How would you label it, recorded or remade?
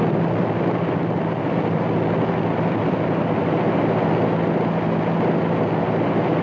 recorded